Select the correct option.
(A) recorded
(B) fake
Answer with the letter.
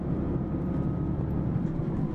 A